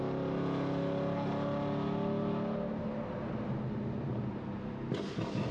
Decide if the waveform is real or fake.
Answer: real